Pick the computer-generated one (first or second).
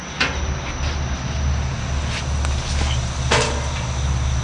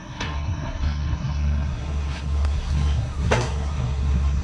second